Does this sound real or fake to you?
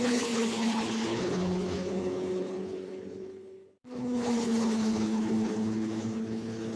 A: fake